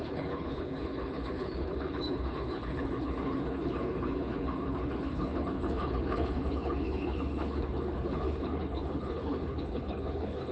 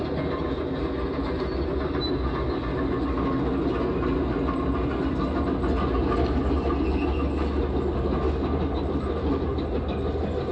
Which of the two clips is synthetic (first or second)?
first